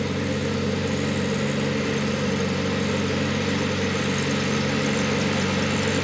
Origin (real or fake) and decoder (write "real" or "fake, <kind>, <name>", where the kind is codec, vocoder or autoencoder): real